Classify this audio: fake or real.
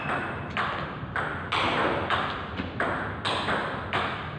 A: real